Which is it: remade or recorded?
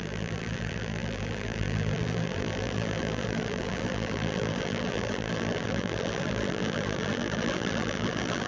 remade